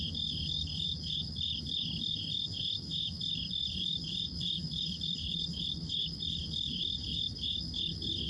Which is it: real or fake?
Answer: fake